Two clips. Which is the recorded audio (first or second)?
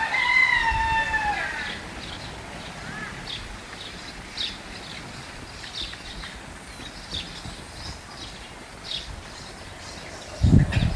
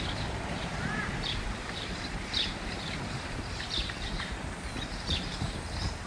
first